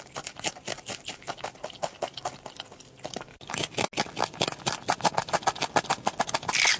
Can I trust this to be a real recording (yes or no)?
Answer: yes